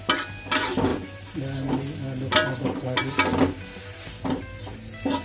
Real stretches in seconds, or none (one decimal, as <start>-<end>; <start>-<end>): 0.0-5.2